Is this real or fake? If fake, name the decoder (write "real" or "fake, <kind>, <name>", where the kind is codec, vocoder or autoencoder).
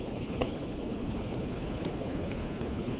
fake, codec, HILCodec